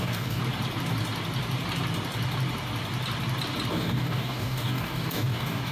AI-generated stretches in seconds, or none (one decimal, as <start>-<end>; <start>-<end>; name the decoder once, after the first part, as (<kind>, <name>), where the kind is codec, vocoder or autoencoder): 0.0-0.4 (codec, DAC); 3.7-5.7